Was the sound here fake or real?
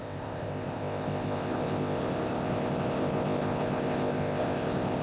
fake